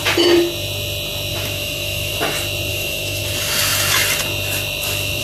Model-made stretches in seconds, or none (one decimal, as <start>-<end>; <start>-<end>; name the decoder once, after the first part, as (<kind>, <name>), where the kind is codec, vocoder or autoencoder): 1.3-2.1 (autoencoder, DAC-VAE); 2.7-3.2